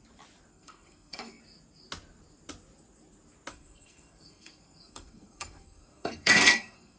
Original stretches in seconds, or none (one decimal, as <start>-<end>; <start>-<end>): 0.0-0.5; 1.4-3.5